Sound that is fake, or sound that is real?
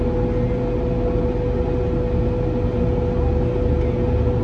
real